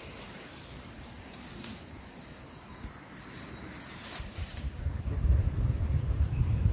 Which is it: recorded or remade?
remade